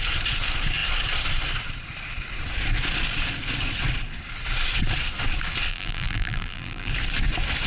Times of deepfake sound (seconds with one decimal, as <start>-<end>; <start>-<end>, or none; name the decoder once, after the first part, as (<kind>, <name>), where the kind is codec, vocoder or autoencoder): 5.7-6.9 (vocoder, BigVGAN v2)